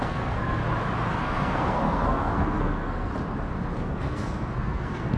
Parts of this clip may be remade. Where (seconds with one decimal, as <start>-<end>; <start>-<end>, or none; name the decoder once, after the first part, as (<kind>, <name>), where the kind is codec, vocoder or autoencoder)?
0.0-0.6 (codec, SNAC); 1.1-3.1; 3.8-5.2